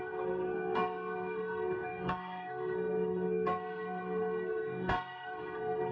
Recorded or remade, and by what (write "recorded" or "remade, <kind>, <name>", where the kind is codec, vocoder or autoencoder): remade, codec, SNAC